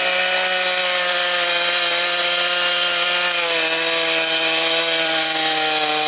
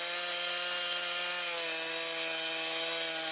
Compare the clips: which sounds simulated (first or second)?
first